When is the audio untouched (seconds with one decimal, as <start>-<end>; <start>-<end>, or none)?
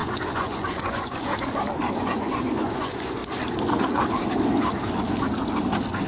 1.3-2.0; 3.2-6.1